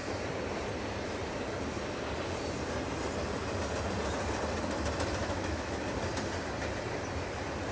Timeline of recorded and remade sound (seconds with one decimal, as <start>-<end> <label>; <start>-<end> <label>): 0.0-5.2 recorded; 5.2-5.8 remade; 5.8-7.7 recorded